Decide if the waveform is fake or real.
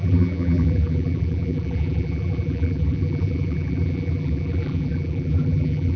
fake